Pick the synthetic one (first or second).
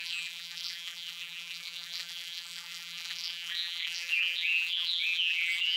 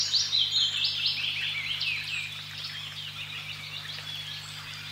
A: first